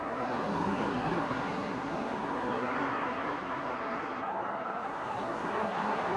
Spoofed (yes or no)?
yes